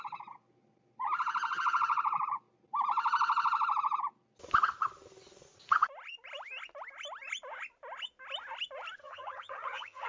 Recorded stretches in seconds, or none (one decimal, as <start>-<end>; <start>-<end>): 0.0-9.0